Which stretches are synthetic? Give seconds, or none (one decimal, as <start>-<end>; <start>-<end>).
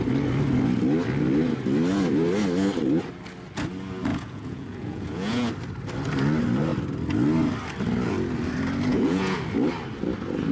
4.1-5.5; 8.9-9.4